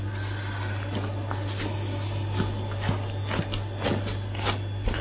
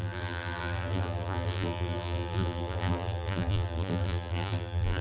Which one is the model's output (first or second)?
second